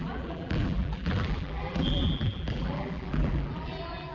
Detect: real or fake fake